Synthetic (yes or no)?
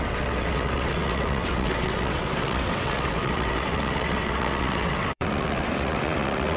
yes